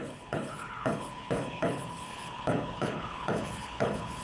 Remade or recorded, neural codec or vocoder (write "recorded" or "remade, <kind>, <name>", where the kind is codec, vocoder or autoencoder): remade, codec, HILCodec